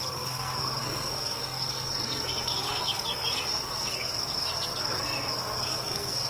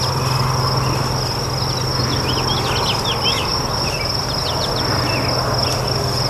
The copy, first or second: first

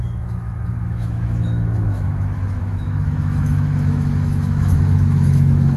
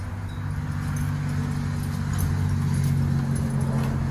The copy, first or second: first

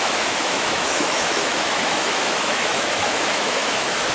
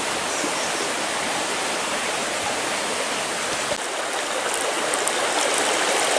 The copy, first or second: first